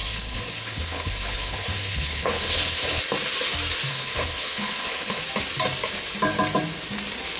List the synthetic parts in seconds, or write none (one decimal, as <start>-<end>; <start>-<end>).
0.0-3.0; 3.9-5.2